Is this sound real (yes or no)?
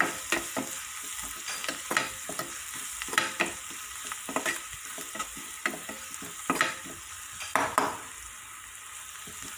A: yes